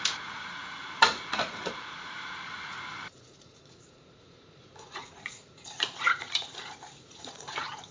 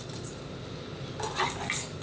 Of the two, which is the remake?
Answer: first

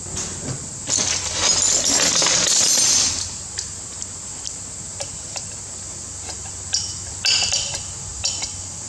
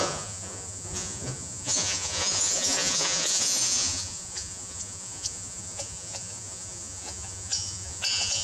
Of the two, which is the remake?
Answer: second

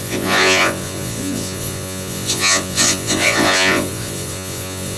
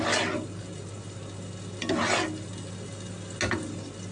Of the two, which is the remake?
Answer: first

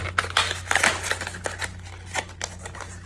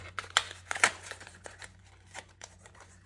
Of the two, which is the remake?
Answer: second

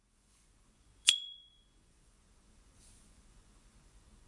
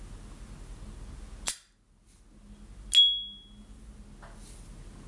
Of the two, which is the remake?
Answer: first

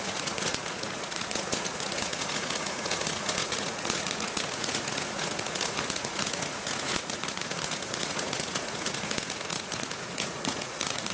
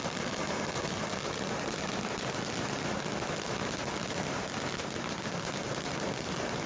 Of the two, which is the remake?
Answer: first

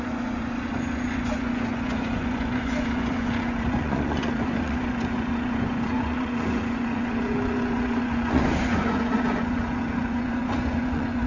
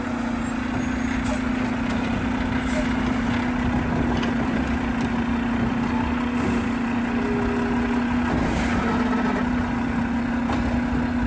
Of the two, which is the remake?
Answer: first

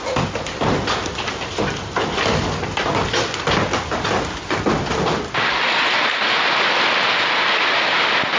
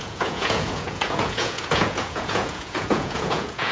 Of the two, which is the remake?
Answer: second